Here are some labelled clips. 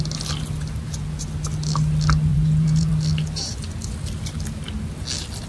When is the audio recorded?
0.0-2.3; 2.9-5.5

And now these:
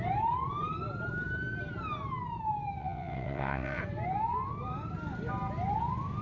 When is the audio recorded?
0.0-2.8; 3.8-6.2

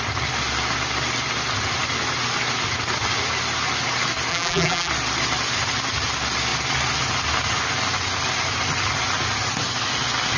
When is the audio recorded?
0.0-4.3; 4.9-10.4

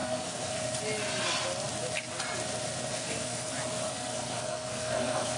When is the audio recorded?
0.6-2.9; 3.5-3.9

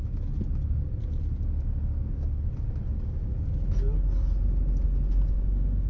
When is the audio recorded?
0.0-5.9

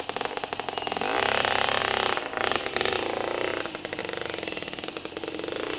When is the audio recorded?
0.0-5.8